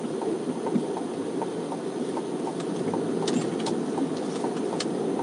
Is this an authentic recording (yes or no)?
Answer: yes